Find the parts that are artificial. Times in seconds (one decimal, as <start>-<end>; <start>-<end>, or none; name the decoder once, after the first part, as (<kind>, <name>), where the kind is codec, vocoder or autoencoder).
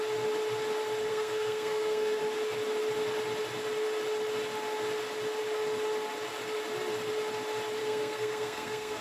1.1-2.2 (codec, SNAC); 7.8-9.0